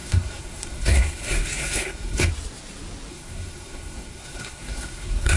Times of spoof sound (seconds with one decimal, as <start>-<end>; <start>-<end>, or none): 0.0-2.3; 3.1-5.4

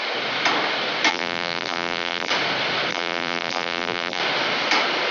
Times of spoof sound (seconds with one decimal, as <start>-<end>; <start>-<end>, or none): 1.1-2.3; 2.9-4.2

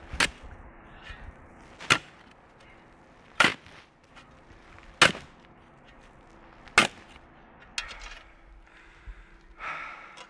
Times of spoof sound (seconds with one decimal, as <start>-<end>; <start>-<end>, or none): 3.5-4.1

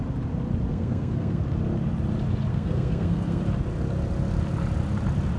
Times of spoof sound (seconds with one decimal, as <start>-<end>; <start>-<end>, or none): 0.7-1.4; 2.5-3.4

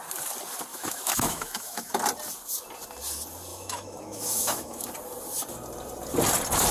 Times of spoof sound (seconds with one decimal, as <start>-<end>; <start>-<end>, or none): 0.7-2.0; 3.5-4.9

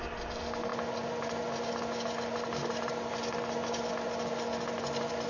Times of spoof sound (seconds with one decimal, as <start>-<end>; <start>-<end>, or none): none

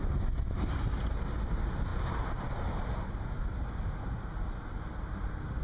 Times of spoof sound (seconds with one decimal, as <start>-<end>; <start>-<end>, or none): none